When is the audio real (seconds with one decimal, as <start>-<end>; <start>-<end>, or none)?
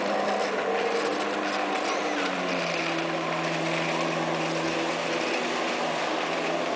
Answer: 0.0-6.8